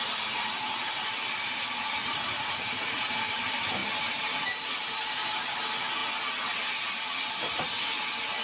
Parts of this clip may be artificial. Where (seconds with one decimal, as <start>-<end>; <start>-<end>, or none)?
2.0-3.0

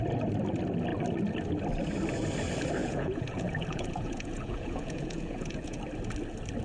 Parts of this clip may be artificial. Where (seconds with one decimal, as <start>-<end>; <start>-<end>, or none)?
2.8-5.8

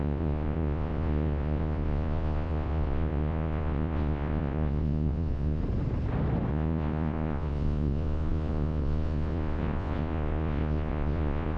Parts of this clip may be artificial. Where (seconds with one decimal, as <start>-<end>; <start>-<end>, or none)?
0.0-5.6; 6.5-11.6

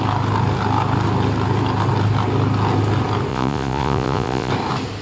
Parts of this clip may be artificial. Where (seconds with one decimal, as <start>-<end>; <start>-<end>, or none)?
3.3-4.5

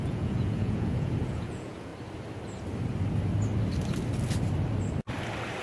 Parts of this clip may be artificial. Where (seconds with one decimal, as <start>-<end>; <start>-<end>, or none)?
0.0-1.9

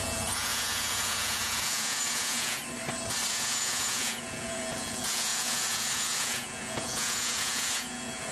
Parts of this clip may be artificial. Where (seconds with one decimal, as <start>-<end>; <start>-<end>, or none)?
0.0-2.6; 3.3-8.3

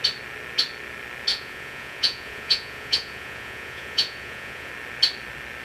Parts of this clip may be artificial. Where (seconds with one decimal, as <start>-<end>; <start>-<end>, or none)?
1.3-4.7